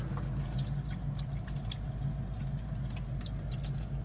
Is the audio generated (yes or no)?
no